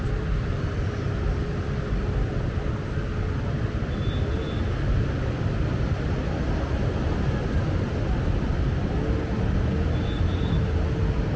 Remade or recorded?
recorded